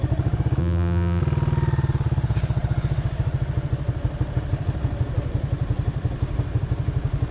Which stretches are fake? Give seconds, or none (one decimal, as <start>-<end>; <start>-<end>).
0.6-1.2